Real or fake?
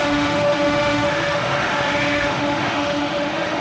fake